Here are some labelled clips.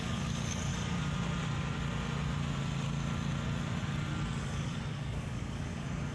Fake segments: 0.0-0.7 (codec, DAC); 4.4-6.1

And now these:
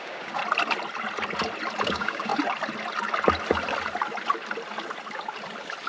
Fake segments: 0.0-0.4 (codec, DAC); 1.8-2.3

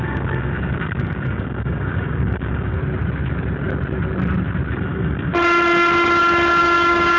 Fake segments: 0.0-2.8 (codec, DAC); 4.7-5.3; 6.6-7.2